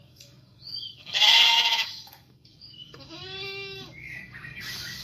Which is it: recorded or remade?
remade